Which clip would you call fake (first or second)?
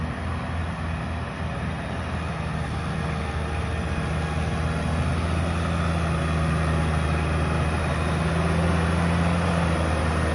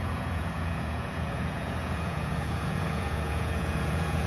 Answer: second